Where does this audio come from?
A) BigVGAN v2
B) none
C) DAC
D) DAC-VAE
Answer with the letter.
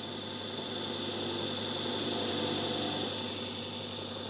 B